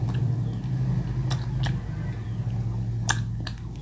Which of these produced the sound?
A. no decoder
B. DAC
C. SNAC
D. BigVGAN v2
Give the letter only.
A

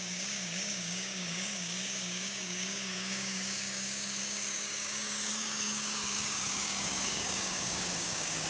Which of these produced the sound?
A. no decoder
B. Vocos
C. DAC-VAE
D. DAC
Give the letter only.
D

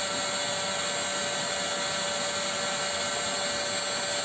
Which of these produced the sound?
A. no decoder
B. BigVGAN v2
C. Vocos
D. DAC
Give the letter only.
A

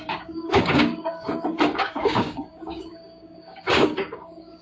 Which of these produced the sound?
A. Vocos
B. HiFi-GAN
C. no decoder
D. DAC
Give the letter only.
D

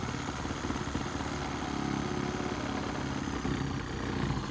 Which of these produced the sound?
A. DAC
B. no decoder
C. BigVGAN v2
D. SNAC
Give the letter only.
B